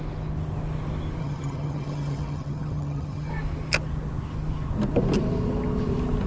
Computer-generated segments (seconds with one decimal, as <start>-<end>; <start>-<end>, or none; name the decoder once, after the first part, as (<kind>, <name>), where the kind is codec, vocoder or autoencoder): 1.2-3.3 (vocoder, HiFi-GAN)